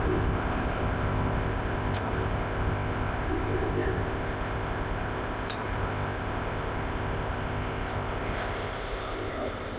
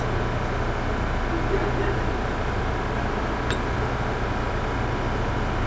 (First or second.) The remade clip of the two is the first